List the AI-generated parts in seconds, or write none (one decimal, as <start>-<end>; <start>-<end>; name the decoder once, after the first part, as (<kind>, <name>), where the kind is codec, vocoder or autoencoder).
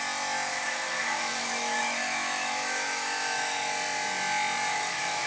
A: 0.5-3.7 (autoencoder, DAC-VAE); 4.7-5.3